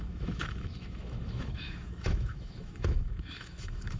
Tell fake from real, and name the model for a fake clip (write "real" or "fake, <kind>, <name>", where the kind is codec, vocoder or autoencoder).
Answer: fake, autoencoder, DAC-VAE